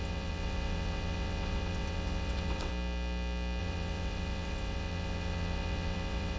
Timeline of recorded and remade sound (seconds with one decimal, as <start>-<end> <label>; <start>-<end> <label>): 0.0-2.7 remade; 2.7-3.6 recorded; 3.6-6.4 remade

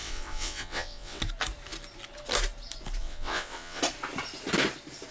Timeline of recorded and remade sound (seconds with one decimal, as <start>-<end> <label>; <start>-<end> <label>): 0.0-1.2 remade; 1.2-3.0 recorded; 3.0-3.8 remade; 3.8-5.1 recorded